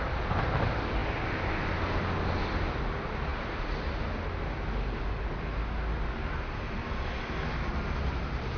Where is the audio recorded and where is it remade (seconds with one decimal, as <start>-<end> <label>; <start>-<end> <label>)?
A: 0.0-8.6 recorded